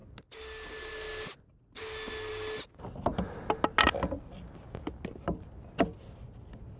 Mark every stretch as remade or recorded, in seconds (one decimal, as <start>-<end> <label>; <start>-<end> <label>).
0.0-6.8 recorded